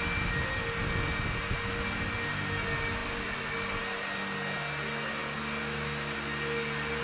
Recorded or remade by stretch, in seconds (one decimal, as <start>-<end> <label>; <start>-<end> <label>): 0.0-7.0 recorded